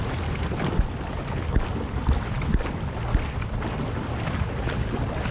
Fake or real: real